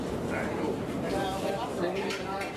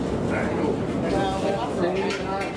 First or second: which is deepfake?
first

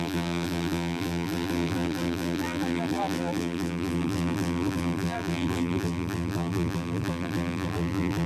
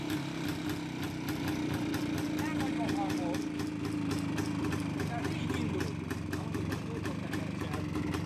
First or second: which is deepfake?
first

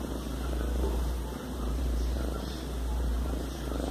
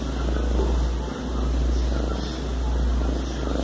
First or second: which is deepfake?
first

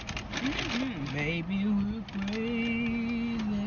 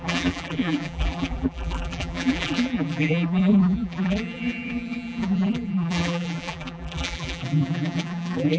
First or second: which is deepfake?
second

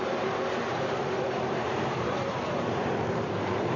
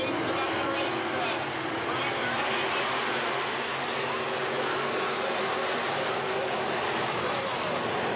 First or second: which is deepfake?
first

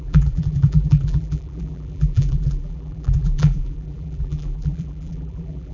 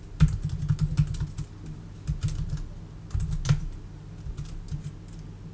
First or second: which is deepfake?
first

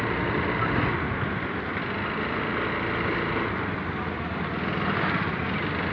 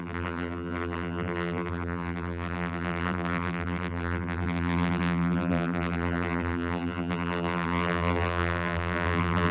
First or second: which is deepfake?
second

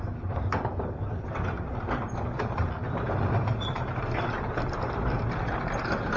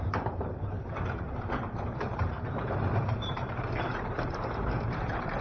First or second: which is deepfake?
second